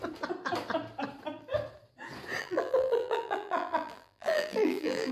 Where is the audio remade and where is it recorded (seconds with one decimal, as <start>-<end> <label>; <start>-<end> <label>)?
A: 0.0-2.4 recorded; 2.4-5.1 remade

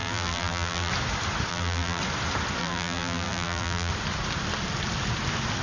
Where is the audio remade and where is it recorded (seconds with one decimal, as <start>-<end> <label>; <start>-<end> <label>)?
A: 0.0-0.9 remade; 0.9-1.5 recorded; 1.5-2.0 remade; 2.0-2.6 recorded; 2.6-3.9 remade; 3.9-5.6 recorded

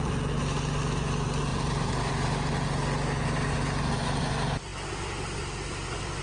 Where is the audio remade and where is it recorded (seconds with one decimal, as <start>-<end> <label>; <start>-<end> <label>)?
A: 0.0-1.5 recorded; 1.5-2.1 remade; 2.1-6.2 recorded

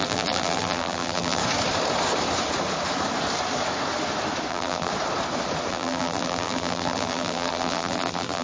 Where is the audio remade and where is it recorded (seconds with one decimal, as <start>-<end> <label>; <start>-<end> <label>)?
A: 0.0-1.4 remade; 1.4-4.5 recorded; 4.5-4.9 remade; 4.9-5.7 recorded; 5.7-8.4 remade